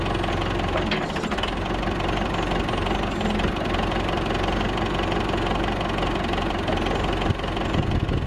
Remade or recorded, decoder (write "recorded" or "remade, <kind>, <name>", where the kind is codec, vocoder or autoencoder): recorded